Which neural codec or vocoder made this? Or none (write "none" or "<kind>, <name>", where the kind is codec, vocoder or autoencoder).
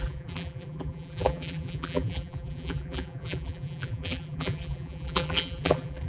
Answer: vocoder, BigVGAN v2